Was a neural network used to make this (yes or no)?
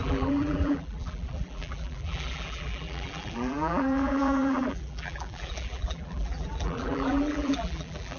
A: yes